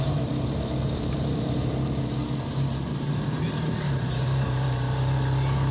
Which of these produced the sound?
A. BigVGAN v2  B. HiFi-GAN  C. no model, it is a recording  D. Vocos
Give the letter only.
A